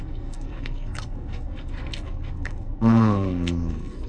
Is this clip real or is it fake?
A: fake